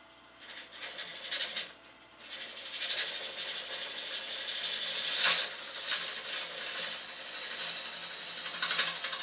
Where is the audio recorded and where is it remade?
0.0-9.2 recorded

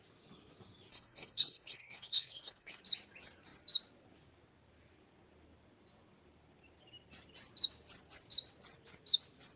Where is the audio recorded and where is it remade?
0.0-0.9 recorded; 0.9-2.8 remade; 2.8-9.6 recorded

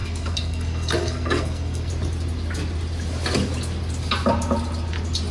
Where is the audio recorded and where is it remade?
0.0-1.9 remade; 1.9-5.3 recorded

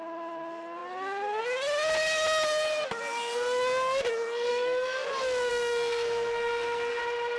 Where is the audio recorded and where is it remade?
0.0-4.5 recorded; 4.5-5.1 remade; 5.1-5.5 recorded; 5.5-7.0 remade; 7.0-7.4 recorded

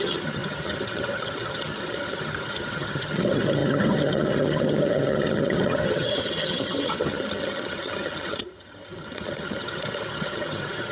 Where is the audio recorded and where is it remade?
0.0-10.9 remade

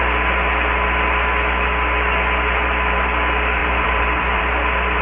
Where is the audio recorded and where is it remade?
0.0-3.6 recorded; 3.6-4.4 remade; 4.4-5.0 recorded

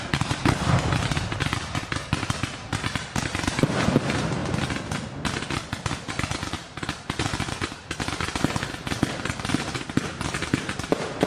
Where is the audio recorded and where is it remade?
0.0-4.4 remade; 4.4-6.1 recorded; 6.1-6.6 remade; 6.6-10.7 recorded; 10.7-11.3 remade

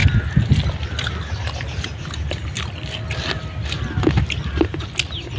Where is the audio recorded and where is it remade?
0.0-5.4 recorded